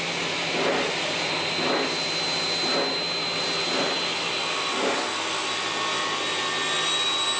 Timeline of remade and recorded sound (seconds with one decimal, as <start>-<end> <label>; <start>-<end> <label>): 0.0-7.4 recorded